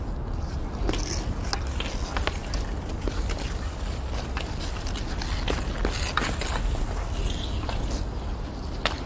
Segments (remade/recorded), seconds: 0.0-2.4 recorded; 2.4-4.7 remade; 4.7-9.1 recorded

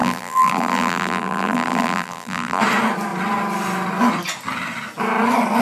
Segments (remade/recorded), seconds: 0.0-2.6 remade; 2.6-5.6 recorded

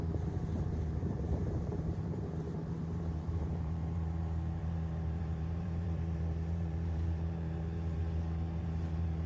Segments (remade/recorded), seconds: 0.0-8.0 remade; 8.0-8.6 recorded; 8.6-9.3 remade

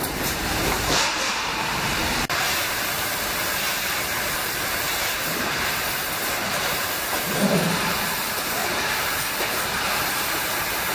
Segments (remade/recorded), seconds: 0.0-10.9 remade